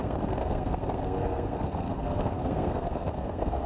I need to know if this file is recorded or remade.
remade